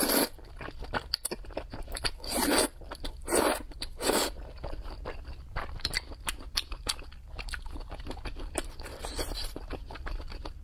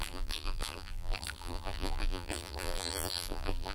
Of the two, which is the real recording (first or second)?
first